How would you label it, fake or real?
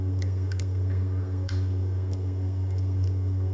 fake